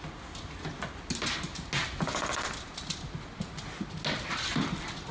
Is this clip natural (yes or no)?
yes